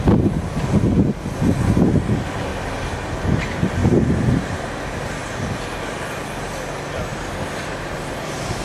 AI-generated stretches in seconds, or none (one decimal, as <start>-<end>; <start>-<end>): 3.8-4.7; 5.2-6.5; 7.1-8.6